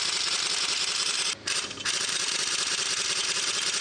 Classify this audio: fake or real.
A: real